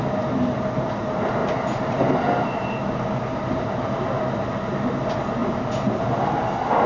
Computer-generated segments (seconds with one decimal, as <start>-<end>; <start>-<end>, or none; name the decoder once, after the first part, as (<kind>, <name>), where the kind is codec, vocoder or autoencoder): none